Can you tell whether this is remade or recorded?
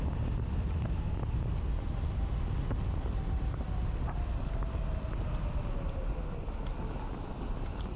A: recorded